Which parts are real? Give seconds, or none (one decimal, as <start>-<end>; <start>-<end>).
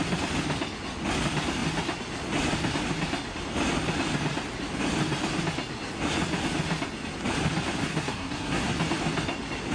0.0-7.9; 8.7-9.7